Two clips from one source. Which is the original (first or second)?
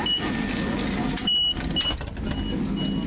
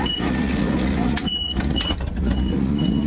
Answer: first